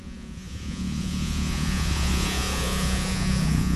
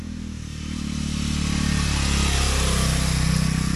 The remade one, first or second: first